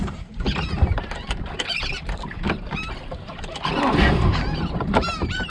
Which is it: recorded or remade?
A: remade